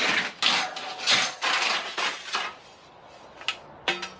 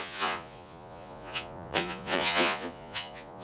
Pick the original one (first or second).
first